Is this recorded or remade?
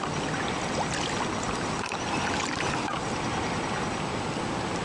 recorded